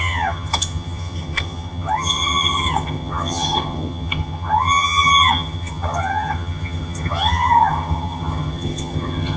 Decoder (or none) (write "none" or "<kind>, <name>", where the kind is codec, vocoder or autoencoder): vocoder, HiFi-GAN